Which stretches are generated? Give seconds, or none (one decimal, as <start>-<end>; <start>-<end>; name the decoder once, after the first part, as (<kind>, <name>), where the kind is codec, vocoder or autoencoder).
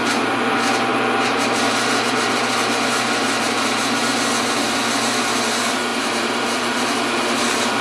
0.9-4.2 (vocoder, BigVGAN v2); 5.9-7.8